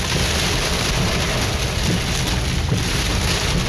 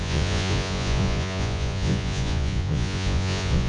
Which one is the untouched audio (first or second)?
first